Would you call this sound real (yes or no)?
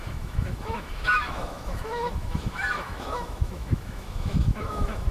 no